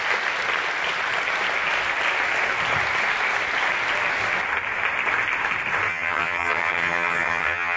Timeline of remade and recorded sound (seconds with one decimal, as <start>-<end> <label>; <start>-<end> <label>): 0.0-5.9 recorded; 5.9-7.8 remade